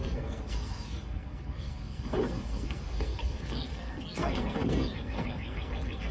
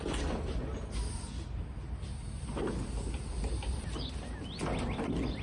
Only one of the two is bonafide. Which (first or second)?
second